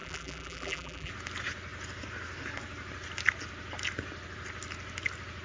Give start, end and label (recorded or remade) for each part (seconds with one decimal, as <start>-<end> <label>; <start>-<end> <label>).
0.0-1.1 remade; 1.1-5.4 recorded